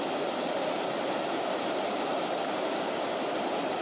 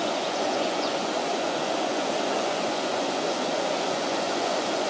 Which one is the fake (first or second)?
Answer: second